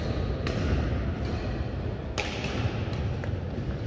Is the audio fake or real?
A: real